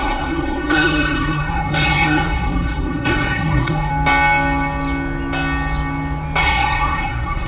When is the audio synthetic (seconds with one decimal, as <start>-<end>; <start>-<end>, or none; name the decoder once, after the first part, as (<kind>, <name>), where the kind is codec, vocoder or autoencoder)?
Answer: 0.0-3.9 (codec, SNAC); 6.4-7.5